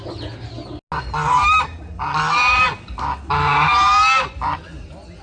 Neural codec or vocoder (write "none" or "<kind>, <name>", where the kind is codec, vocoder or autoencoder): none